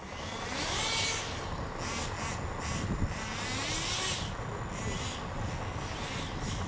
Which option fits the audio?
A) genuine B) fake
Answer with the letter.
A